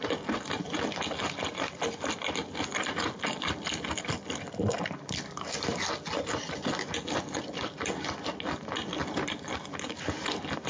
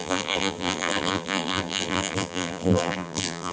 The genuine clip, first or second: first